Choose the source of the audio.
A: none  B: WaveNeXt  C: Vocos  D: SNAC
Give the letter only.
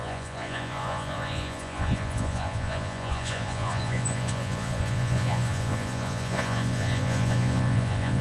C